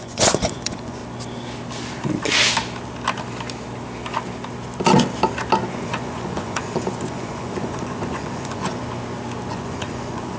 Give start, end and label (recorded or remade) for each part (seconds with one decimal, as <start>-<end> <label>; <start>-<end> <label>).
0.0-1.0 remade; 1.0-5.7 recorded; 5.7-8.8 remade; 8.8-9.5 recorded; 9.5-10.4 remade